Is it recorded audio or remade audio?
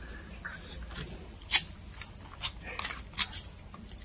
recorded